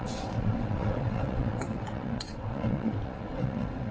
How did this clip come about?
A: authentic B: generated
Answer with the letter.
B